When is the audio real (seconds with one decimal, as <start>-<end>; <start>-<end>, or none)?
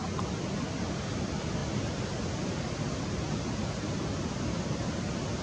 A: 0.0-5.4